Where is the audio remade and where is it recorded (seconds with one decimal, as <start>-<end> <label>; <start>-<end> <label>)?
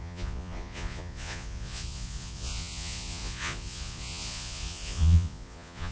0.0-5.9 remade